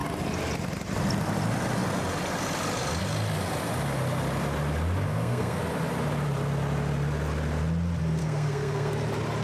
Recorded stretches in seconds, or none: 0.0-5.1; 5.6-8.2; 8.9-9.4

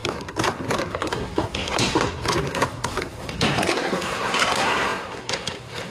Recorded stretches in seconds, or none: none

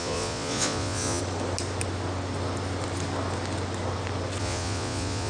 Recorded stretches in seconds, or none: 1.2-4.4